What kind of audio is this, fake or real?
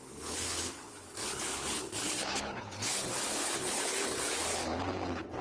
fake